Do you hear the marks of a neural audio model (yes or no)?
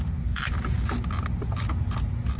no